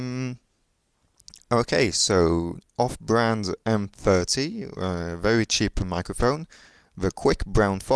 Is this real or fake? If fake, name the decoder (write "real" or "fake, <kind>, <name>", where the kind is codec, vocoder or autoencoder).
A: real